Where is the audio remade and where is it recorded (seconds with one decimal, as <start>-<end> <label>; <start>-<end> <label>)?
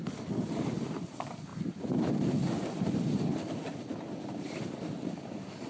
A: 0.0-5.7 recorded